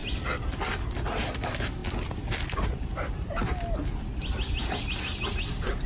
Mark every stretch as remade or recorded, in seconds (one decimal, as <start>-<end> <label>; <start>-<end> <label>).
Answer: 0.0-5.9 recorded